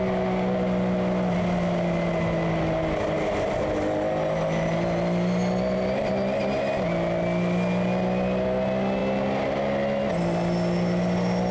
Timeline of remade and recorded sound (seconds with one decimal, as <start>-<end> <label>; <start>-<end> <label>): 0.0-11.5 recorded